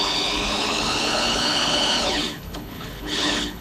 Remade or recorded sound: remade